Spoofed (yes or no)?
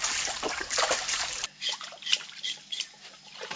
no